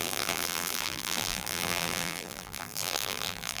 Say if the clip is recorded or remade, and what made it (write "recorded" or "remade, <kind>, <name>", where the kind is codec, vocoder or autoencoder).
remade, vocoder, BigVGAN v2